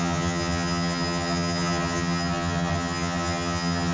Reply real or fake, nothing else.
fake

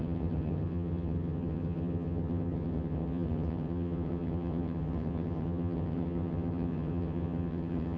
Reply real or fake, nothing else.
fake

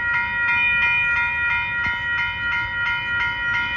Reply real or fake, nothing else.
real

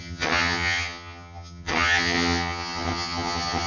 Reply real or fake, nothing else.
fake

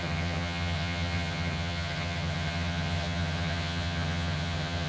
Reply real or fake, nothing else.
fake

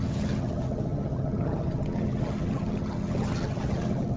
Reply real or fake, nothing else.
fake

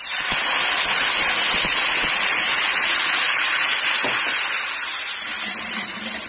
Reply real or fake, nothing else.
real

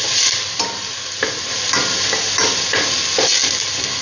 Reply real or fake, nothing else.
real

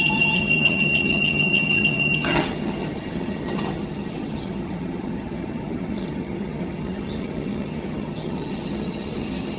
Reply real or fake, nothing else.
fake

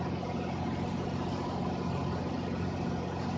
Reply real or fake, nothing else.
real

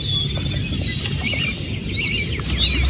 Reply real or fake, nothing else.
real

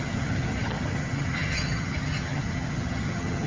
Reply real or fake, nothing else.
fake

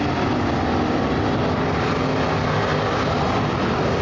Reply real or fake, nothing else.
real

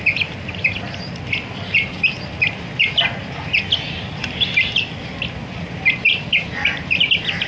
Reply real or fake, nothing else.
real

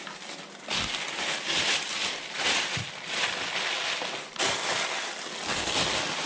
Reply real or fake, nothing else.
real